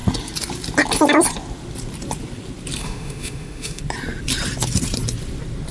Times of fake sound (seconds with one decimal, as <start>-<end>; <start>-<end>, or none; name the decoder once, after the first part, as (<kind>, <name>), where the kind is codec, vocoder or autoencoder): 2.8-3.8 (autoencoder, DAC-VAE)